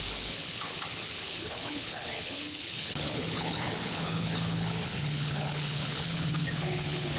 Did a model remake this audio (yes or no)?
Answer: yes